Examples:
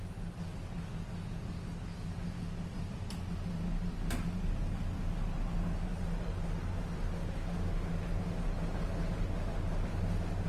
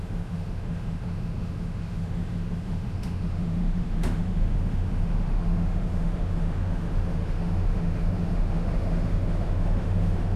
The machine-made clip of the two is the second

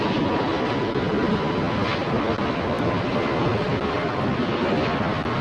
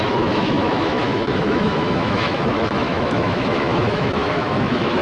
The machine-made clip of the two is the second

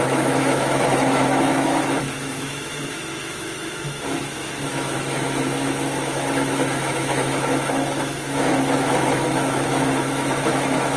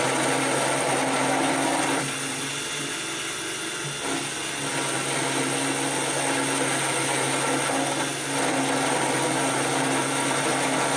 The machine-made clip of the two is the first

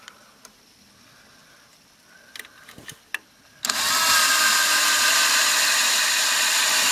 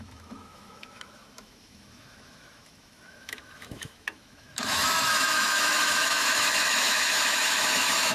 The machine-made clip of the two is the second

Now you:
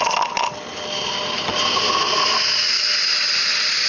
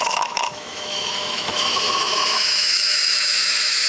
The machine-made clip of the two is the second